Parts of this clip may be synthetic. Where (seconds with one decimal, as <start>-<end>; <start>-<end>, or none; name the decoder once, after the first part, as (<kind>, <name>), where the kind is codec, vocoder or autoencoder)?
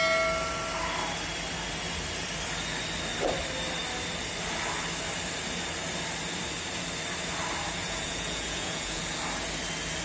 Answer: 7.8-9.0 (vocoder, Vocos)